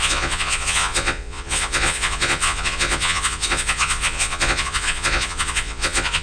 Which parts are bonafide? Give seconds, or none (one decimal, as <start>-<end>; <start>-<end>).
none